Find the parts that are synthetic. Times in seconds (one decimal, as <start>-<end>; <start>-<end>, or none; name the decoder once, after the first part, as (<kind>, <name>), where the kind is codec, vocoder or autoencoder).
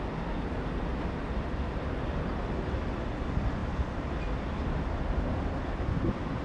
3.6-4.2 (vocoder, BigVGAN v2)